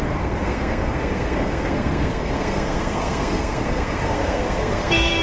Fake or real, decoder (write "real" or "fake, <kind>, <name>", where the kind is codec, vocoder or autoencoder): fake, codec, SNAC